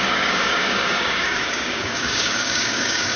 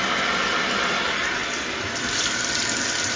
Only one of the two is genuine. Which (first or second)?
second